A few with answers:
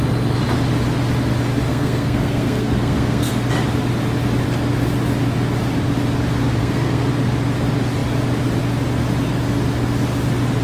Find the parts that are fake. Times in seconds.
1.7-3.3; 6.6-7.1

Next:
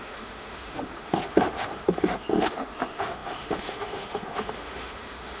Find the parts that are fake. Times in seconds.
0.0-5.4

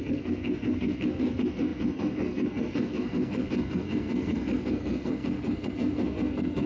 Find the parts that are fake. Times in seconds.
0.0-6.7

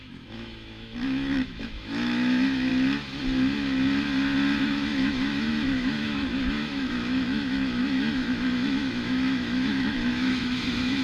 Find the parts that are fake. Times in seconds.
0.0-2.7; 4.6-11.0

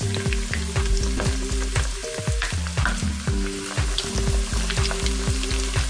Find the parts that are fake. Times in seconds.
none

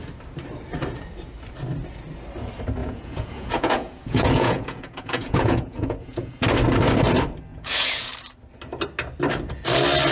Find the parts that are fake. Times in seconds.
2.8-6.4; 7.5-8.1

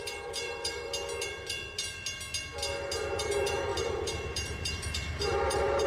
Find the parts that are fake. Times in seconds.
0.0-0.9; 3.0-5.9